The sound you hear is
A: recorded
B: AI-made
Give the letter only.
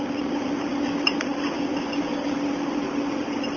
A